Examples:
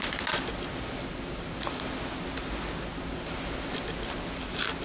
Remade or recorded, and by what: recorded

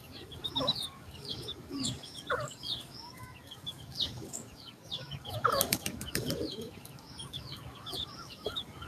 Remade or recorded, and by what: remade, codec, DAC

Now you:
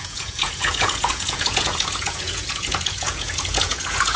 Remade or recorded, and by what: remade, vocoder, Vocos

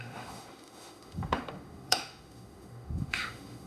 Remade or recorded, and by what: remade, autoencoder, DAC-VAE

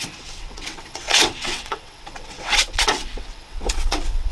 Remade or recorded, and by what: remade, vocoder, WaveNeXt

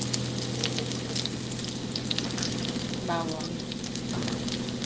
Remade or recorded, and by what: recorded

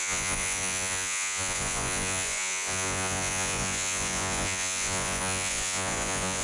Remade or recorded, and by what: remade, vocoder, Vocos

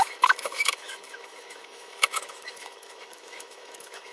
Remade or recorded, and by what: remade, autoencoder, DAC-VAE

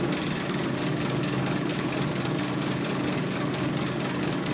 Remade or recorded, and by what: remade, codec, DAC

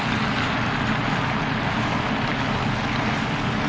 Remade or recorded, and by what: recorded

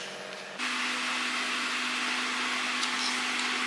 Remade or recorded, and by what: recorded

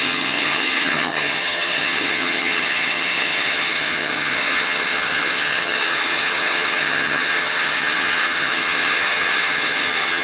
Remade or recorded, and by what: remade, vocoder, HiFi-GAN